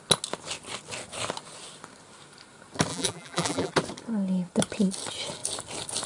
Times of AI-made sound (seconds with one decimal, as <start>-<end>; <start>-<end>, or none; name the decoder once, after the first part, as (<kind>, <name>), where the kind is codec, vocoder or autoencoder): 2.9-3.7 (vocoder, BigVGAN v2)

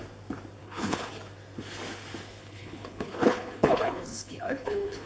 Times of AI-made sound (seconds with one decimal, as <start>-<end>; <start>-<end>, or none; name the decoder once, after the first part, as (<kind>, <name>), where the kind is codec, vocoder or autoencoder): 0.6-1.1 (codec, HILCodec); 2.4-5.1

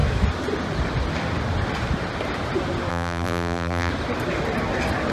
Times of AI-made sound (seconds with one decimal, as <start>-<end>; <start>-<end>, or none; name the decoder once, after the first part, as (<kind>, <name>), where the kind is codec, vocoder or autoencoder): 2.9-3.9 (vocoder, BigVGAN v2)